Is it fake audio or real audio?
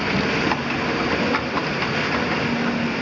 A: real